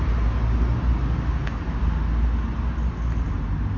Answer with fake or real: real